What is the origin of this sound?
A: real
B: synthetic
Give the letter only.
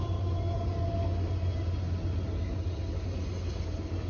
A